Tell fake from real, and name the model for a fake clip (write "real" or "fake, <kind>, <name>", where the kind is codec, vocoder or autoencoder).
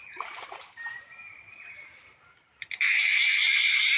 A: fake, vocoder, BigVGAN v2